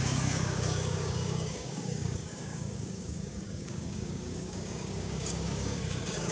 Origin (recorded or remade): remade